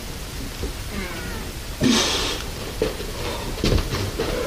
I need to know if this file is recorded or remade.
recorded